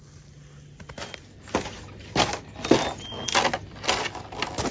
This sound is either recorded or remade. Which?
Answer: recorded